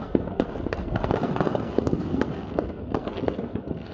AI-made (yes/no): yes